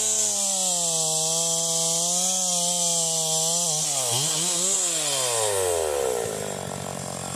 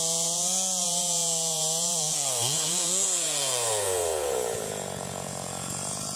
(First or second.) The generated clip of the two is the second